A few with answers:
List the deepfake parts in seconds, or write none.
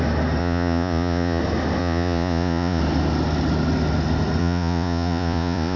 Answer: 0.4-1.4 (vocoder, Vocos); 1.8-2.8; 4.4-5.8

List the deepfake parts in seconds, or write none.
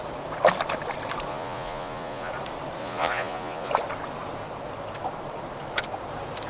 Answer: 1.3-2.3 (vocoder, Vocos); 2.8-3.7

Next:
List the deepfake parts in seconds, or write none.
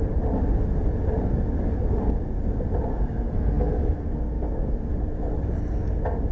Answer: 2.9-4.9 (codec, SNAC)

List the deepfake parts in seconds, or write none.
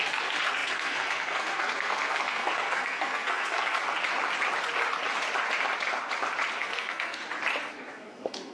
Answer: 0.0-3.8 (codec, SNAC); 6.6-7.2; 7.7-8.5